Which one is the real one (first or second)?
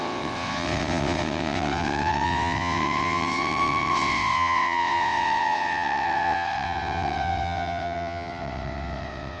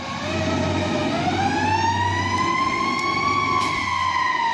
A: second